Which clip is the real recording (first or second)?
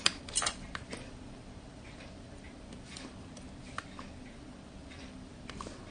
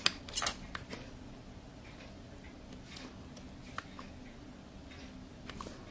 second